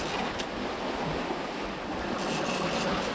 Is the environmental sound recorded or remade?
recorded